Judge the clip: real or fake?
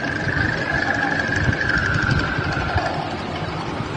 real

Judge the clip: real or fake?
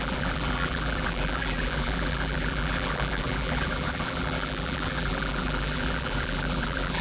fake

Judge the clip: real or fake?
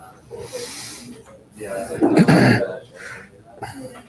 real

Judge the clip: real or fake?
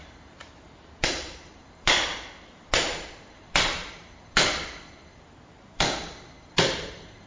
fake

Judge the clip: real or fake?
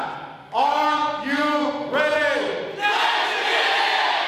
real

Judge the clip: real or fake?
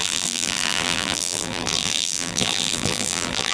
fake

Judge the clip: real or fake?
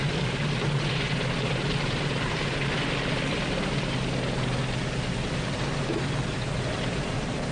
real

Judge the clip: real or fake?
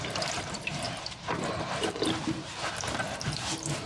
fake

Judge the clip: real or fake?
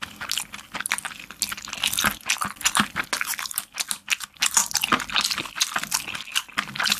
real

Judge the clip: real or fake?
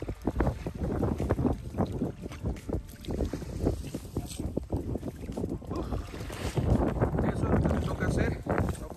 fake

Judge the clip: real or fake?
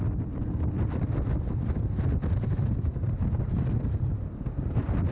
real